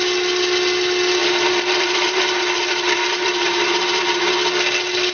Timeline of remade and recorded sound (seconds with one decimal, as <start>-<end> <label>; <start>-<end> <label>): 0.0-1.2 recorded; 1.2-4.3 remade; 4.3-5.1 recorded